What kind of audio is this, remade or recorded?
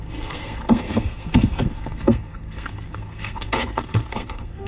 remade